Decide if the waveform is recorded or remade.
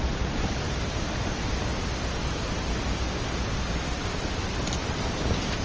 recorded